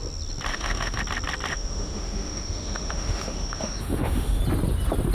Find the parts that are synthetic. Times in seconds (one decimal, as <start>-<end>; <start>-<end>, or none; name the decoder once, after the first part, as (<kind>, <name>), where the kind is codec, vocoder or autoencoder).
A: 0.5-1.0 (autoencoder, DAC-VAE); 1.5-4.4